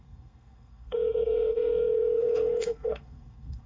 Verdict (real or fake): fake